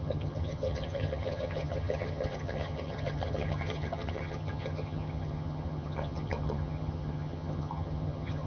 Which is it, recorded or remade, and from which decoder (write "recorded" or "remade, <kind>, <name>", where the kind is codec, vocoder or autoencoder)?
remade, vocoder, HiFi-GAN